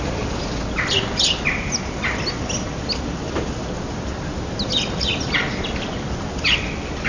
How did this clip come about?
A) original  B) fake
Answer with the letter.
A